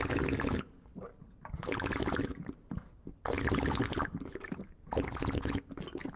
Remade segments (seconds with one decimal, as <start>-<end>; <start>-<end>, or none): none